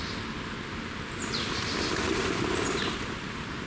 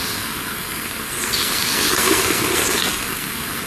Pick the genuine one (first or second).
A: first